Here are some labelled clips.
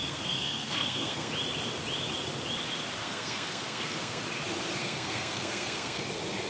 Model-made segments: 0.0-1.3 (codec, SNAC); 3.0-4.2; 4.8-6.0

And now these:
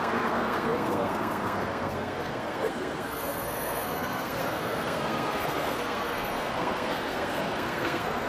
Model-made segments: 0.0-8.3 (codec, SNAC)

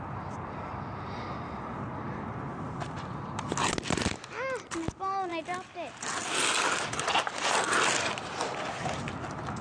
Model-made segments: none

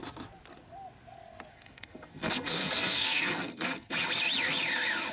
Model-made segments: 1.5-3.9 (codec, SNAC)

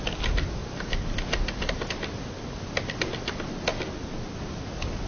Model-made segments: none

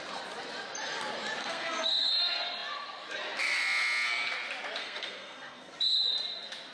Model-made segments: 1.4-2.1 (codec, SNAC); 4.8-5.7

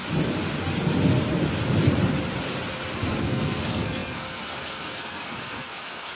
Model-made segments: 3.2-6.1 (codec, SNAC)